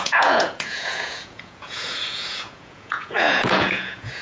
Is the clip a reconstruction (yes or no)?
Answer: yes